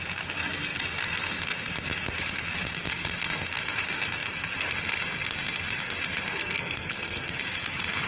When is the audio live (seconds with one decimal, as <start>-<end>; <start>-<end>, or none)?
0.0-6.4; 7.4-8.1